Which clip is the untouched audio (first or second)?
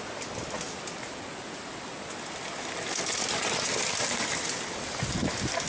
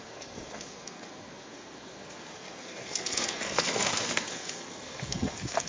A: first